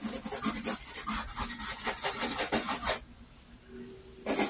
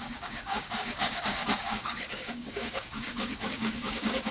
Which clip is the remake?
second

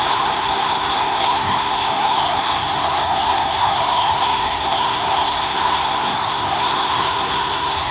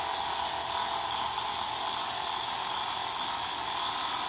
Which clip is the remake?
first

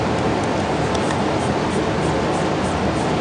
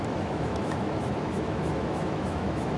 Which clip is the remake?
second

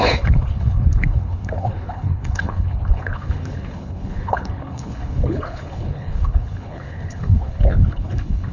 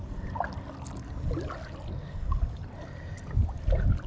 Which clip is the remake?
first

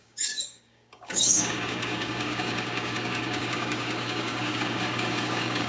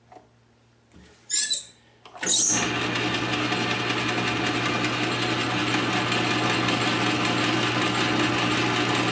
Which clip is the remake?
first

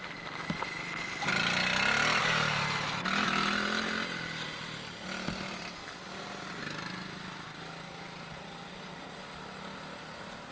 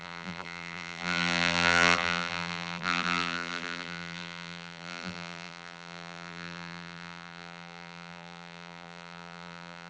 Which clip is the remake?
second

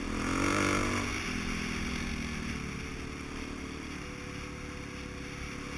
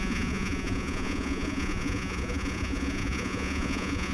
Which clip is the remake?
second